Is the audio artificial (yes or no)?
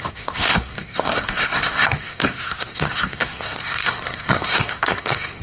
yes